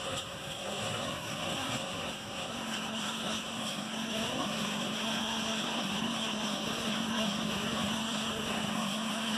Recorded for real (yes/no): no